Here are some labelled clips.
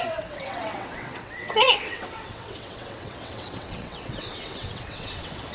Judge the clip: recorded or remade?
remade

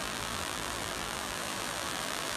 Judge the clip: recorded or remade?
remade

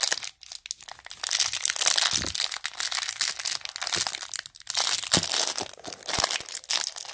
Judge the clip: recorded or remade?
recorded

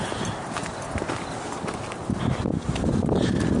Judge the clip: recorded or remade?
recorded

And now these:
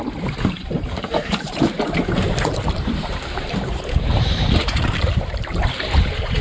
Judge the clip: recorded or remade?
remade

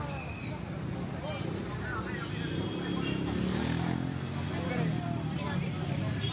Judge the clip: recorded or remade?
recorded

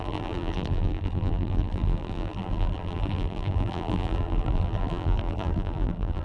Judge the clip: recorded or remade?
remade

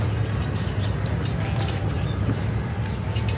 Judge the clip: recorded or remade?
recorded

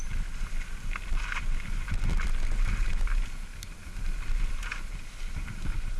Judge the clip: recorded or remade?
recorded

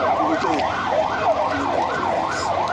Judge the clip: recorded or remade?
recorded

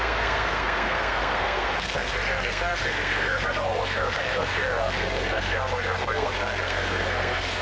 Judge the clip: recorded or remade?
remade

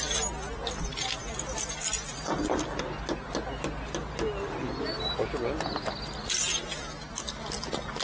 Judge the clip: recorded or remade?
recorded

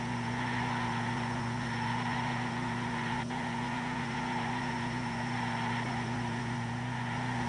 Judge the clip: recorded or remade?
remade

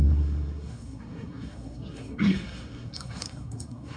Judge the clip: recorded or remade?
remade